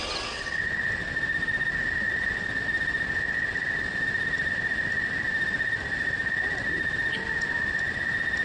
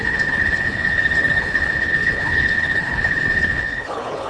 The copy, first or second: second